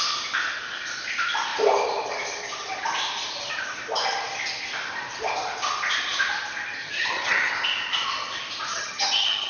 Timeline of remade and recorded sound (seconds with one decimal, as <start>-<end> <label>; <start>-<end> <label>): 0.0-6.8 recorded; 6.8-7.5 remade; 7.5-8.7 recorded; 8.7-9.5 remade